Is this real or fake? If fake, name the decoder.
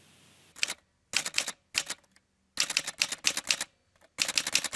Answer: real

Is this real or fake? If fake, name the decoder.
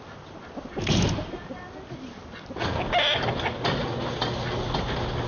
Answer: real